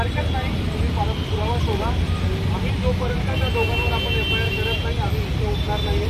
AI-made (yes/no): no